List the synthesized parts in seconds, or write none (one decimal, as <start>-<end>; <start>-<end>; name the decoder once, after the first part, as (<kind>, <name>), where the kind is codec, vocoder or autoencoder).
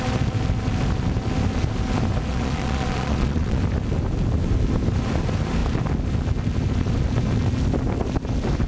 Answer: 2.3-3.6 (vocoder, Vocos)